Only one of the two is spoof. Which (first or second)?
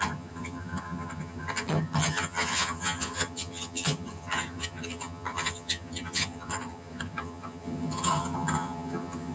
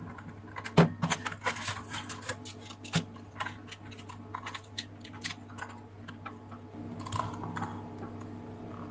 first